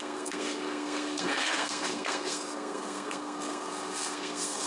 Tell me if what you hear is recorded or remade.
remade